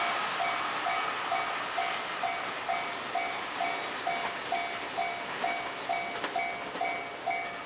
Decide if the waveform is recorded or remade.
recorded